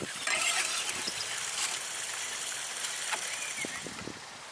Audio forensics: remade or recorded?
recorded